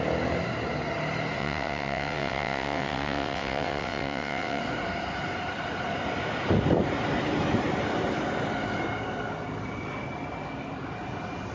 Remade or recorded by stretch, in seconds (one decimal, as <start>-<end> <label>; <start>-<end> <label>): 0.0-1.4 recorded; 1.4-4.6 remade; 4.6-11.5 recorded